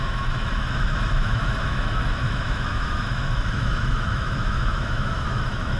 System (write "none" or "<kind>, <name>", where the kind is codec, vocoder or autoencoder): autoencoder, DAC-VAE